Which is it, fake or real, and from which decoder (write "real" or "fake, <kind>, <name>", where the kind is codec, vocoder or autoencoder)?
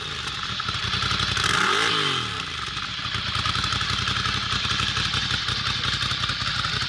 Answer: real